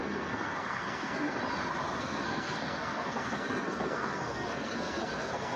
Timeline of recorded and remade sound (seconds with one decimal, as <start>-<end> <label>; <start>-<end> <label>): 0.0-1.4 remade; 1.4-2.0 recorded; 2.0-5.6 remade